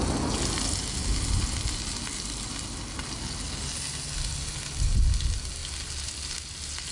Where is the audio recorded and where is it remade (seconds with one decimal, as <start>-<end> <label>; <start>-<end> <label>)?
0.0-6.9 recorded